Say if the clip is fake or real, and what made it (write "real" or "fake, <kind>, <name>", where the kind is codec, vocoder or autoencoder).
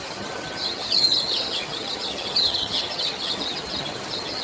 fake, vocoder, HiFi-GAN